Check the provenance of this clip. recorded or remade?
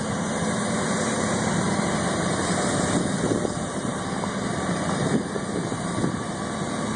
remade